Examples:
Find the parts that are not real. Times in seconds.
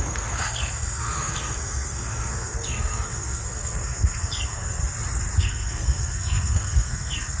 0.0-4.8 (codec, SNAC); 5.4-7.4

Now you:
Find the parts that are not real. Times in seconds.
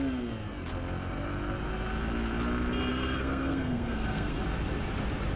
2.9-4.4 (codec, SNAC)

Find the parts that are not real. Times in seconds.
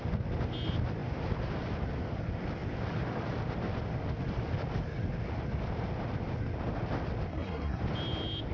7.3-7.8 (codec, SNAC)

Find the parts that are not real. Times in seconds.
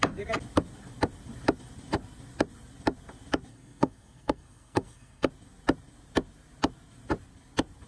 3.5-5.3 (codec, SNAC)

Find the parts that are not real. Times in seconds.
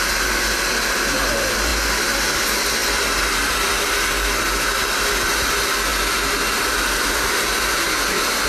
none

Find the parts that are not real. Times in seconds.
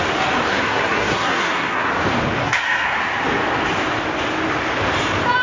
0.5-1.9 (codec, SNAC); 2.4-3.0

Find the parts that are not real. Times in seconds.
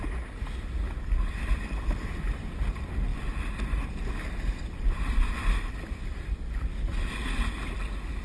none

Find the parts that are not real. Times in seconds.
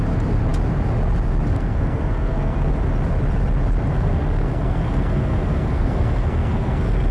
1.5-2.7 (codec, SNAC); 3.9-7.1